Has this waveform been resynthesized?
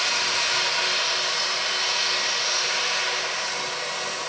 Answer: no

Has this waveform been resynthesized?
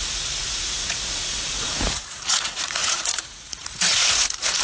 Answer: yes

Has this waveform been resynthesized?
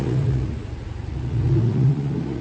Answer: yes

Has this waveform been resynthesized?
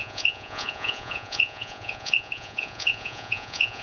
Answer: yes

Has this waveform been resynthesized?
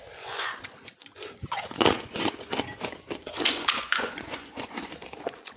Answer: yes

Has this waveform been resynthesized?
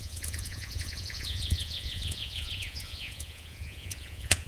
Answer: yes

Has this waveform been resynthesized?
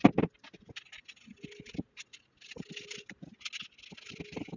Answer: no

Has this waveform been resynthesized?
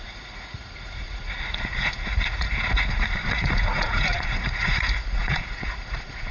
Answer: yes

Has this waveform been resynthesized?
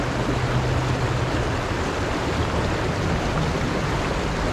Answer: no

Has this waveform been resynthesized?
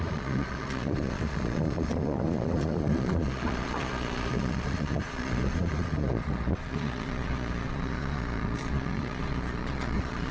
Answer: yes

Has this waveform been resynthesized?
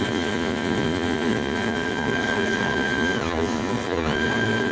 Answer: yes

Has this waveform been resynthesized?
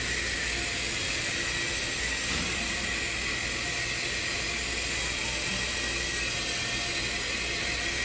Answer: no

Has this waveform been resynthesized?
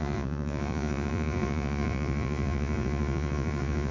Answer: yes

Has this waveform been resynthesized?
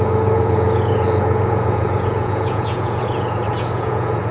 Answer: yes